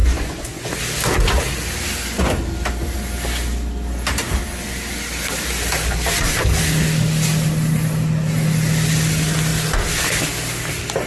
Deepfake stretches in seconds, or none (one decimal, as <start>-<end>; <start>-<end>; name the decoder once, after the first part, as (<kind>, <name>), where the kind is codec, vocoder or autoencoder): 0.0-0.8 (vocoder, Vocos)